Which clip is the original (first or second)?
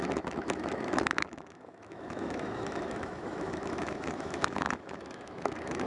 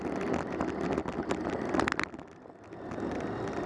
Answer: second